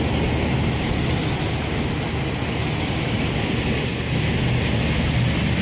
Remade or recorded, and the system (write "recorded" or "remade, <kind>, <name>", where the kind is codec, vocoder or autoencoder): recorded